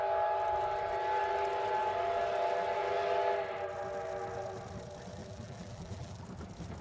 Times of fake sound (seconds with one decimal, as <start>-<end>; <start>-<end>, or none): 5.2-6.2